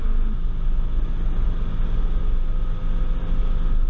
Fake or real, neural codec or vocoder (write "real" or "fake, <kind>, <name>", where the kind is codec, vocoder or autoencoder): real